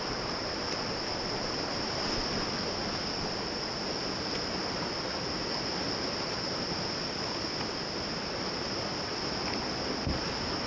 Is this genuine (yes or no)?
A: yes